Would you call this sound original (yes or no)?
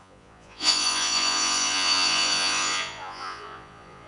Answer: no